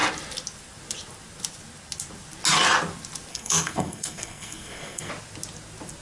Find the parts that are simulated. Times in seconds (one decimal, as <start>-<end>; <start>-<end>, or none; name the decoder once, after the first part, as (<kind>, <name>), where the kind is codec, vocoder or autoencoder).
3.3-5.1 (codec, SNAC)